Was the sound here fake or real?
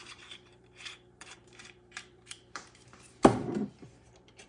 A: fake